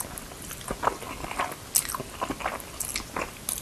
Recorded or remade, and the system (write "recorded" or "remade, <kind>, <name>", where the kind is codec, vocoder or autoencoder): recorded